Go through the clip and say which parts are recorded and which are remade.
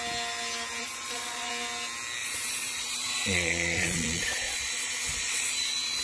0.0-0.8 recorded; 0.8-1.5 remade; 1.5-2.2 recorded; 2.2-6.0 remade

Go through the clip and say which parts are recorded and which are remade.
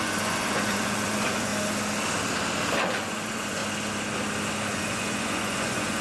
0.0-1.5 remade; 1.5-2.8 recorded; 2.8-3.6 remade; 3.6-4.7 recorded; 4.7-6.0 remade